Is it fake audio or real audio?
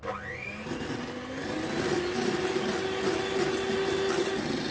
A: real